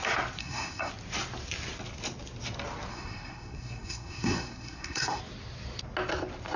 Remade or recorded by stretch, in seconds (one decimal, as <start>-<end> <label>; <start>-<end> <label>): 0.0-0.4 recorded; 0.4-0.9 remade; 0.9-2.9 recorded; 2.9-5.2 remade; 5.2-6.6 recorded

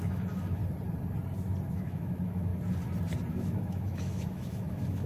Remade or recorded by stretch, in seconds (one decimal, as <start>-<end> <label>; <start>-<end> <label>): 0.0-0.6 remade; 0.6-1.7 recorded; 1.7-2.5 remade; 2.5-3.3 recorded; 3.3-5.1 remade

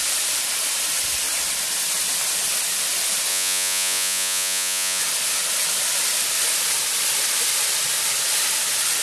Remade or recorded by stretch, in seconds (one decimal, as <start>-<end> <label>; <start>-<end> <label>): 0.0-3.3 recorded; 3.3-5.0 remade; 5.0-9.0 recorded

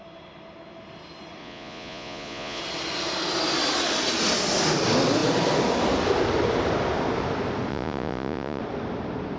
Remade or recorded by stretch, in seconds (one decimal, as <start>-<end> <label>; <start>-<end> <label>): 0.0-1.4 recorded; 1.4-2.6 remade; 2.6-7.7 recorded; 7.7-8.6 remade; 8.6-9.4 recorded